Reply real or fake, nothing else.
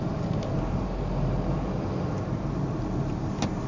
real